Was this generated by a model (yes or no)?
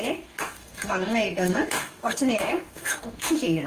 yes